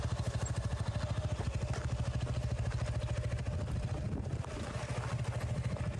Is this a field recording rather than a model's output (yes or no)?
yes